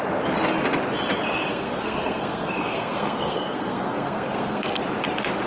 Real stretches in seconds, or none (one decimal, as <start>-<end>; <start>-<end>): 0.0-1.5; 4.8-5.5